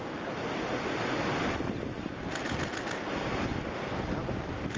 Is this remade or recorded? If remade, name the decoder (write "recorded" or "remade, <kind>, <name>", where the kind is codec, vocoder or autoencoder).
recorded